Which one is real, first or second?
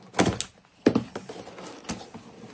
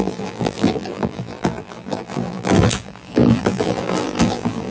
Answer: first